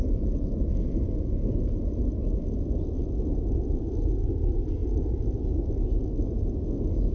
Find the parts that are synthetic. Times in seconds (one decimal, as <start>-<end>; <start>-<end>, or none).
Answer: none